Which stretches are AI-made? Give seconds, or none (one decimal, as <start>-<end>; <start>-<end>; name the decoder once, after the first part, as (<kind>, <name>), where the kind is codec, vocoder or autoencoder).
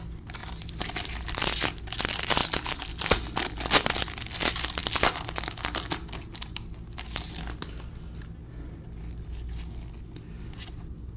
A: 0.4-1.1 (vocoder, BigVGAN v2); 2.4-3.0